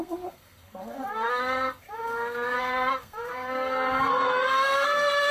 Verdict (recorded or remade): remade